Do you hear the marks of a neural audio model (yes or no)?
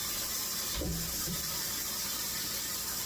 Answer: yes